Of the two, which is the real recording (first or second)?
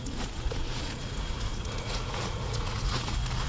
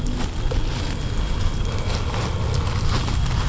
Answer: second